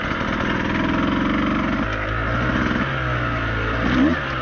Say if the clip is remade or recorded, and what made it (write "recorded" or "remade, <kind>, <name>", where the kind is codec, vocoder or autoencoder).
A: recorded